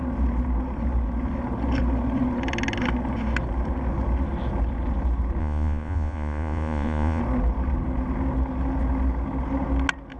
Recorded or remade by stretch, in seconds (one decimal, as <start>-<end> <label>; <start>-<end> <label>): 0.0-5.4 recorded; 5.4-7.2 remade; 7.2-10.2 recorded